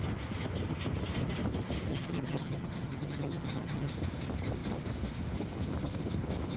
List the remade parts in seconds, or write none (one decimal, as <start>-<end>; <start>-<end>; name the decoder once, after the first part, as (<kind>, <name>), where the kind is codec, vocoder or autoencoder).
1.9-3.9 (vocoder, HiFi-GAN)